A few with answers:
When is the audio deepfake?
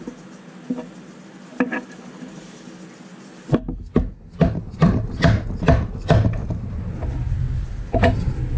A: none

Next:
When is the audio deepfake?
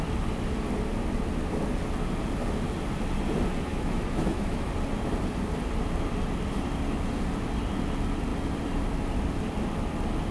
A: 3.7-4.7 (autoencoder, DAC-VAE)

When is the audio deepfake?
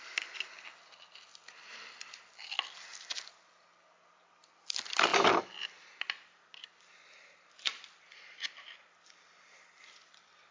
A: none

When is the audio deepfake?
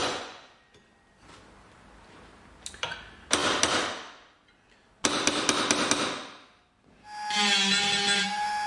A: 0.0-0.5 (vocoder, Vocos)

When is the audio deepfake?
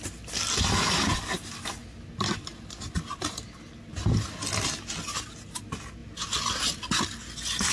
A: none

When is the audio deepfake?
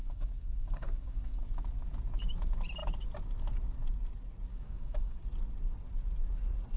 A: 0.0-1.4 (codec, DAC); 4.5-5.2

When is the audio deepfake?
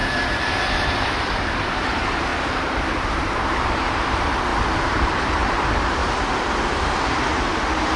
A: 0.0-2.3 (vocoder, BigVGAN v2); 2.9-6.0